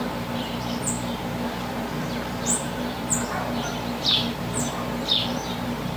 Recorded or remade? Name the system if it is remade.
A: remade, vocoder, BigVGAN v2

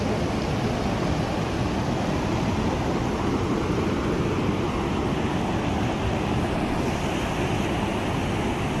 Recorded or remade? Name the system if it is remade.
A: recorded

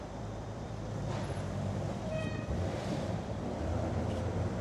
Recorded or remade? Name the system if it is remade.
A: remade, vocoder, BigVGAN v2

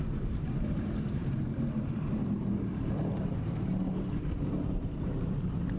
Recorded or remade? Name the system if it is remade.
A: remade, vocoder, BigVGAN v2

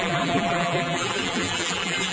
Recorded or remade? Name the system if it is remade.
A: remade, vocoder, BigVGAN v2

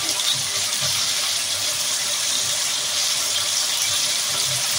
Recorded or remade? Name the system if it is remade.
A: remade, vocoder, BigVGAN v2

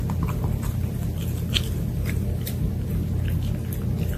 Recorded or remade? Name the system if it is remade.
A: recorded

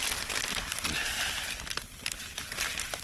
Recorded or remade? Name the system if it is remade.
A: recorded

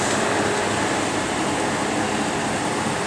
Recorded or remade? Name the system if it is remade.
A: recorded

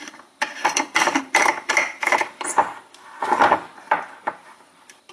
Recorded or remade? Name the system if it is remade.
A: remade, vocoder, BigVGAN v2